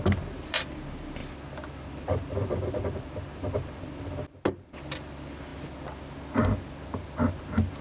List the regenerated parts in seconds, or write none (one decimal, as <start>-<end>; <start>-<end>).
none